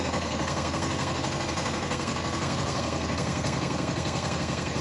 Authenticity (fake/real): fake